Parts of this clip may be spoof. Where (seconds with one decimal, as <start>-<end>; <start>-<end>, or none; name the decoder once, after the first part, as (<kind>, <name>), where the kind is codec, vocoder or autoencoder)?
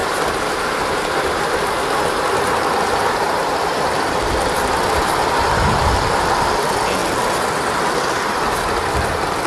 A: 0.0-3.7 (vocoder, BigVGAN v2)